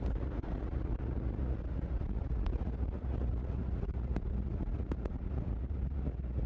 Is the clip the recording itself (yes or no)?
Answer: no